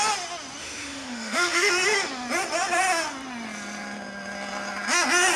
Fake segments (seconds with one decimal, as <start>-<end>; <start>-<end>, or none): 0.6-1.7